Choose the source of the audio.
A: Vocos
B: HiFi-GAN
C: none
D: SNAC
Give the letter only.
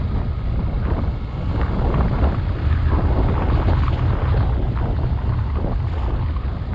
C